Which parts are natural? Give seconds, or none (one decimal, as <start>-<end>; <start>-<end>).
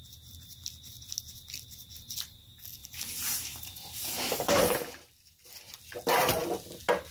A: 0.0-2.8; 4.8-7.1